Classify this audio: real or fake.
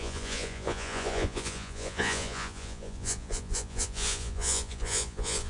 fake